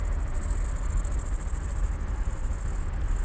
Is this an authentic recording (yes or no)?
yes